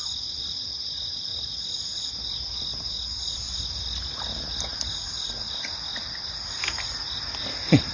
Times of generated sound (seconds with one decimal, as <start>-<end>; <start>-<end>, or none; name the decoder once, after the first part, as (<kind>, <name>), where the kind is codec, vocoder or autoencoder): none